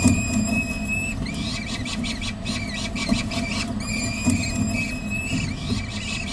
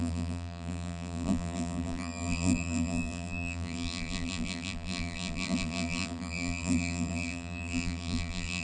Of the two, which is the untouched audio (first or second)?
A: first